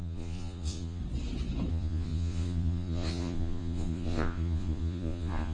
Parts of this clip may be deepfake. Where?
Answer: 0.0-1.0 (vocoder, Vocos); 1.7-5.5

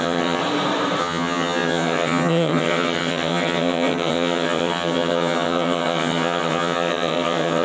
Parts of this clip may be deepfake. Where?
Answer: 0.0-0.4 (vocoder, HiFi-GAN); 1.0-7.6

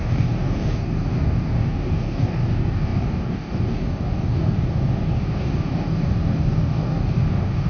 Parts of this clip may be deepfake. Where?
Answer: 0.0-7.7 (codec, DAC)

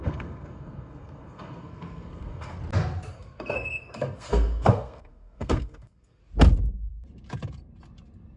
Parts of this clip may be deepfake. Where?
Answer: 0.0-2.6 (codec, SNAC); 3.1-6.2

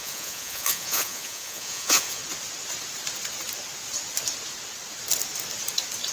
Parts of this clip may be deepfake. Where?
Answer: 0.0-2.2 (vocoder, Vocos)

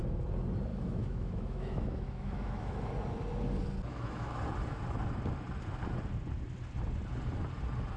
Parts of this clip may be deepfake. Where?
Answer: 0.7-2.8 (autoencoder, DAC-VAE); 3.9-4.4